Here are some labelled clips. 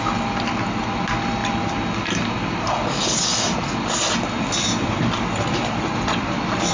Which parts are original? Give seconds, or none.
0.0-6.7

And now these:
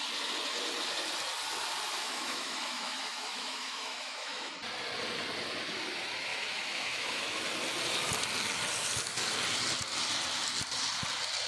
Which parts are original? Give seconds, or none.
0.0-2.0; 4.5-6.3; 7.4-11.5

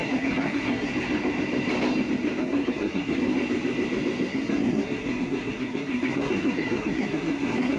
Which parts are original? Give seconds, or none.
0.9-2.4; 3.2-4.3